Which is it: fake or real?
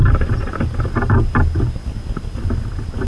real